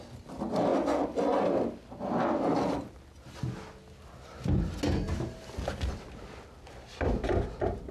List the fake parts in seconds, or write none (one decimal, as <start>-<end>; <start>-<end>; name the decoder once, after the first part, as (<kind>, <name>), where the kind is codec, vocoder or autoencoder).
none